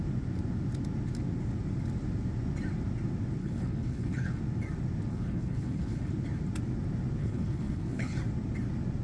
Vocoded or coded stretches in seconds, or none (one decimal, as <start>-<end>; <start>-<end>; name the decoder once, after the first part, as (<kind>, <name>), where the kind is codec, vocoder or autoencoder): 3.4-4.4 (codec, HILCodec); 5.1-6.1; 7.2-8.2